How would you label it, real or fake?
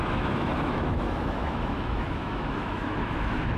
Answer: fake